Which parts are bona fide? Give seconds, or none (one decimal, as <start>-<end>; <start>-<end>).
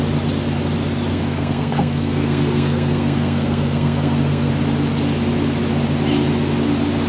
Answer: 0.0-1.1; 4.5-7.1